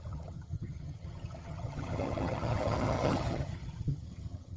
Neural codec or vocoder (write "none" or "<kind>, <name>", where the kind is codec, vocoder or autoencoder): vocoder, HiFi-GAN